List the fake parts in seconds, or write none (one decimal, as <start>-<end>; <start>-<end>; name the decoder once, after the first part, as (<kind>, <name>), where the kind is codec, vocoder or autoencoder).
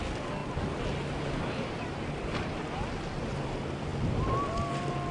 none